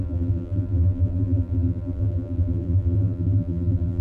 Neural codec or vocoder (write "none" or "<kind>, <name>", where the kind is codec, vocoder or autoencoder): vocoder, BigVGAN v2